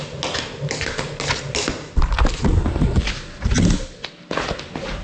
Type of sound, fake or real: real